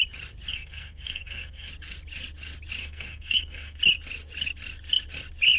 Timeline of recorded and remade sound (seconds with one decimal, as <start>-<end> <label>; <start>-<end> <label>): 0.0-0.5 recorded; 0.5-1.7 remade; 1.7-2.8 recorded; 2.8-3.8 remade; 3.8-5.6 recorded